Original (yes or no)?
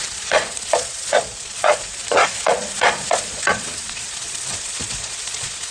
no